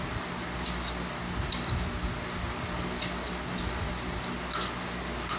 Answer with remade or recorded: recorded